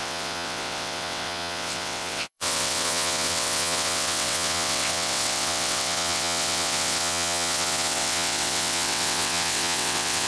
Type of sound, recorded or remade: remade